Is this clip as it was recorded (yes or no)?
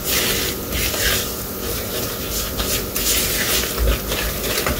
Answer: yes